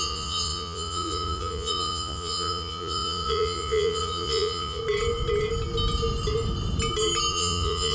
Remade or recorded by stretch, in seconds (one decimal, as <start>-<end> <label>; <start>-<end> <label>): 0.0-4.8 remade; 4.8-7.3 recorded; 7.3-7.9 remade